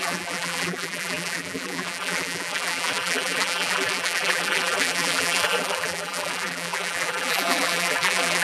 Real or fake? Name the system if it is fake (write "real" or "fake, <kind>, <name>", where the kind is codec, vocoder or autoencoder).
fake, vocoder, BigVGAN v2